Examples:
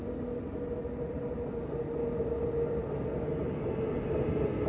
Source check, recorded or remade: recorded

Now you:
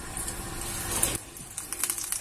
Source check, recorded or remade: recorded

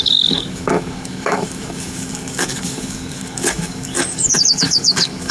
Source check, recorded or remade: remade